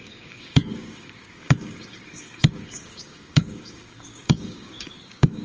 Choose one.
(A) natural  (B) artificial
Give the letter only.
B